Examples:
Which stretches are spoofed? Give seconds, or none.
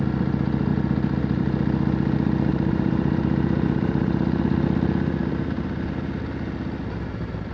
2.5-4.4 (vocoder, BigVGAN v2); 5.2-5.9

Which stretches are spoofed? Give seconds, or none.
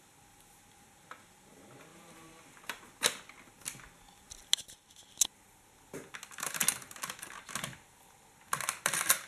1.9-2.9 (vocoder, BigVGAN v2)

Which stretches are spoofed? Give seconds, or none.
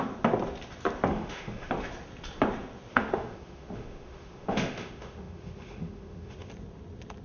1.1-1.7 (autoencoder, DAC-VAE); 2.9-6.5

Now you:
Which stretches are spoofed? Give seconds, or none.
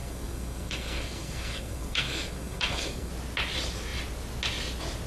0.0-3.1 (codec, SNAC)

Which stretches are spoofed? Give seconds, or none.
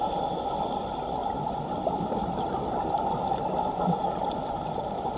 1.2-4.3 (vocoder, BigVGAN v2)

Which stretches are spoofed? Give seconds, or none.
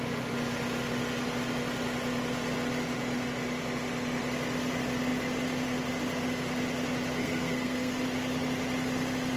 7.2-8.0 (codec, SNAC)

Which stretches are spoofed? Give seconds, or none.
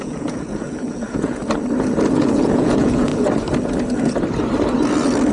0.0-1.4 (vocoder, Vocos); 2.1-3.1